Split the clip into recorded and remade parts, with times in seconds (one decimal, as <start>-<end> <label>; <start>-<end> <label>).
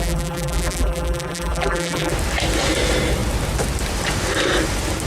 0.0-2.1 remade; 2.1-5.1 recorded